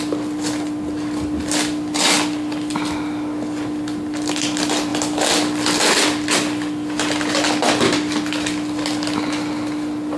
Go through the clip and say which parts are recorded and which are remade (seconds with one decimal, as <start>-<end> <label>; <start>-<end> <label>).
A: 0.0-10.2 recorded